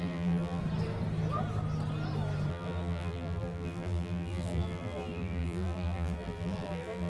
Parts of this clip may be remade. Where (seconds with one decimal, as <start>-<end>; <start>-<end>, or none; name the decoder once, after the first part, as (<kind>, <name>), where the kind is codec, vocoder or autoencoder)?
0.0-0.6 (vocoder, BigVGAN v2); 2.5-7.1